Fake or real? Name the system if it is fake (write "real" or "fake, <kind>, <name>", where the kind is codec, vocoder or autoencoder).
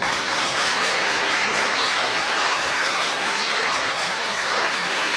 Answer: fake, codec, SNAC